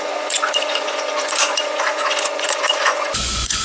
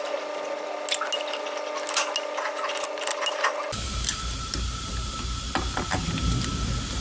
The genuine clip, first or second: second